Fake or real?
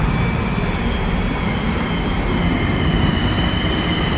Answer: real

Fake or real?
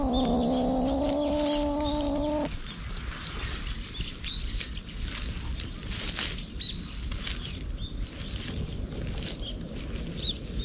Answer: real